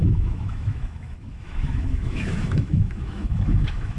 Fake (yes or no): yes